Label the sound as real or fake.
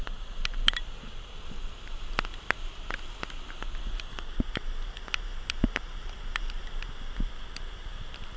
real